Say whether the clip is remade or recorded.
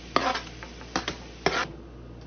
recorded